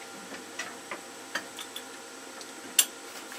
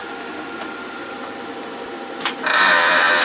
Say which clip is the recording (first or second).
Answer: first